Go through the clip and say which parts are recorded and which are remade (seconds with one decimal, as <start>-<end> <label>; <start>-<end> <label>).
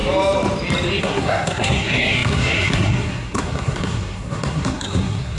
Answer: 0.0-1.0 recorded; 1.0-5.4 remade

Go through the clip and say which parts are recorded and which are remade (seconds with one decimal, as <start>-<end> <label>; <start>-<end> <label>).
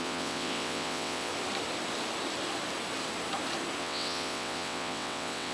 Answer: 0.0-1.3 remade; 1.3-3.8 recorded; 3.8-5.5 remade